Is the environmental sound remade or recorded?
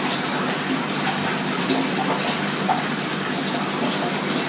recorded